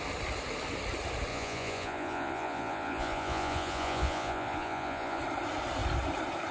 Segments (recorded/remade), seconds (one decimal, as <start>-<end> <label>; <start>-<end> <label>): 0.0-1.3 recorded; 1.3-5.2 remade; 5.2-6.5 recorded